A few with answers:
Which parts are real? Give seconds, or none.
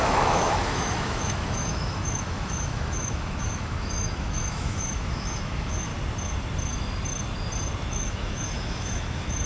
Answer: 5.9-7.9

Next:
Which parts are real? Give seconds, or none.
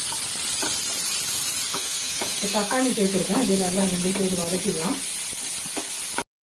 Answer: 0.0-1.7; 3.8-6.4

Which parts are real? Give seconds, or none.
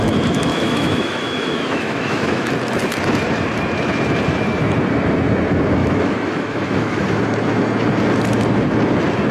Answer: 0.0-0.5; 2.5-5.8; 7.0-9.3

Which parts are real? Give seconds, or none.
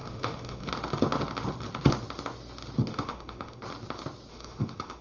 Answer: 0.7-2.9; 3.6-4.3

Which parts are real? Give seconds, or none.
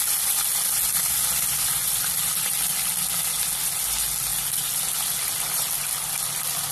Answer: 0.0-6.7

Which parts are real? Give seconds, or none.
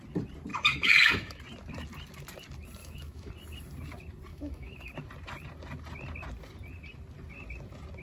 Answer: 0.0-0.5; 1.4-2.8; 3.3-4.3; 4.9-8.0